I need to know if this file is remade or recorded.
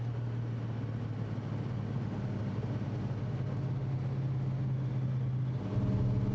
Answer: recorded